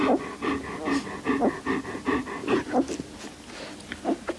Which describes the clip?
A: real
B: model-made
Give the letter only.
A